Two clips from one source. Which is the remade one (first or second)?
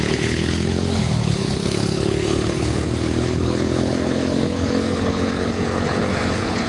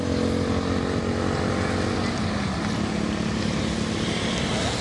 first